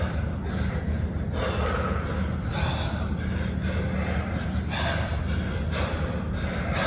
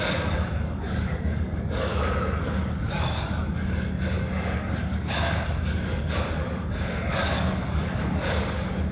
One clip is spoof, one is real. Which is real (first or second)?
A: first